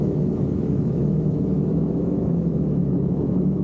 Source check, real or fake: fake